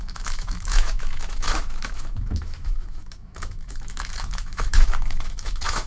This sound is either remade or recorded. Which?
remade